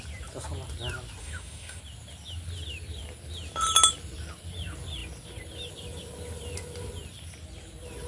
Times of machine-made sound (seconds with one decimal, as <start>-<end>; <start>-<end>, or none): 1.2-1.8